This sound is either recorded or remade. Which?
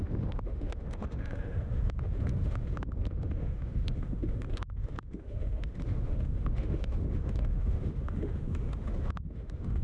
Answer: remade